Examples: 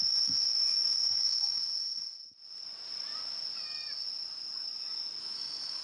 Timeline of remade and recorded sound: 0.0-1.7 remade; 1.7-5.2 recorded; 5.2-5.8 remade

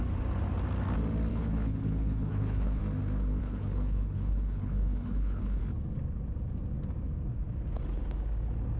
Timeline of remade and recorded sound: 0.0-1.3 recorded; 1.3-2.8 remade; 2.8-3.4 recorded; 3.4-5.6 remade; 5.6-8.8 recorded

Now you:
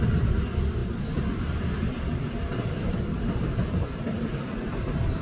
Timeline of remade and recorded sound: 0.0-5.2 remade

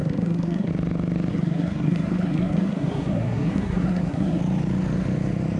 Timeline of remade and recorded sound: 0.0-0.7 remade; 0.7-1.3 recorded; 1.3-4.4 remade; 4.4-5.6 recorded

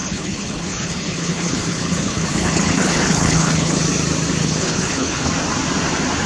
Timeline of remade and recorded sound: 0.0-3.8 remade; 3.8-4.4 recorded; 4.4-5.3 remade; 5.3-6.3 recorded